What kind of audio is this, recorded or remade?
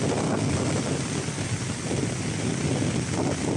recorded